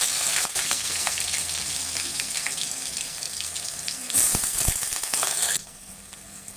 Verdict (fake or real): fake